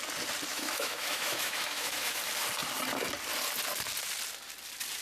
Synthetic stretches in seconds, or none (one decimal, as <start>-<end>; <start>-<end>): 0.5-2.2